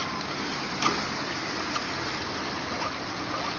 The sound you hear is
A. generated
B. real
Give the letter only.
B